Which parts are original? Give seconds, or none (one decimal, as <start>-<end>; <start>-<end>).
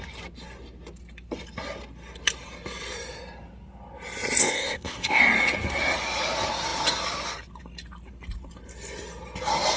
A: 0.0-4.4; 5.2-9.8